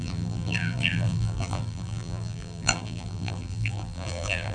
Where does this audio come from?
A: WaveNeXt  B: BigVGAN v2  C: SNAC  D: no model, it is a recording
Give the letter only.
B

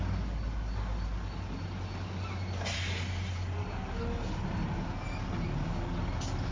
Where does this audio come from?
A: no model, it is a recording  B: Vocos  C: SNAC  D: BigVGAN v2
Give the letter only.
A